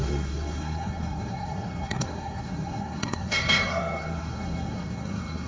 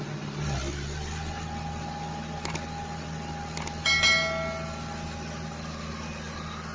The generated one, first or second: first